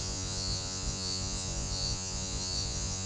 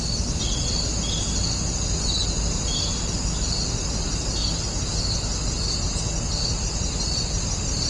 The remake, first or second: first